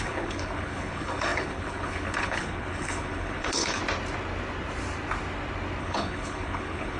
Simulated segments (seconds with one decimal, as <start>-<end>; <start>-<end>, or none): 0.0-3.8; 5.8-7.0